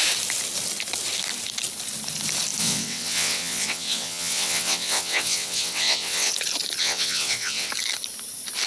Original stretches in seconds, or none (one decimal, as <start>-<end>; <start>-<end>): 0.0-2.6; 6.3-6.8; 7.7-8.7